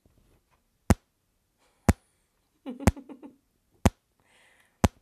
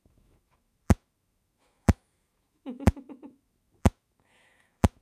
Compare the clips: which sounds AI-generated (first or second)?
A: second